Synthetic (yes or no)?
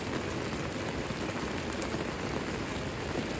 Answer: yes